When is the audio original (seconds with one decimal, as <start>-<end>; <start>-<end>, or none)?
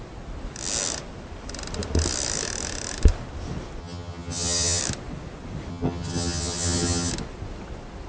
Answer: 0.0-3.8; 4.8-5.7; 7.1-8.1